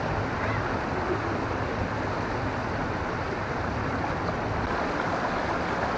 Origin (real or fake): real